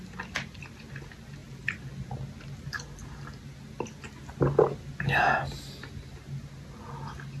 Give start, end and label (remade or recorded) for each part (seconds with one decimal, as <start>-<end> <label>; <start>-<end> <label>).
0.0-7.4 recorded